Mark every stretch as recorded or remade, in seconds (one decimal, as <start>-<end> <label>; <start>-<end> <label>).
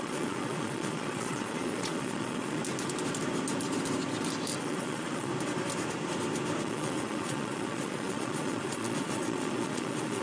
0.0-2.6 remade; 2.6-4.6 recorded; 4.6-5.3 remade; 5.3-6.6 recorded; 6.6-10.2 remade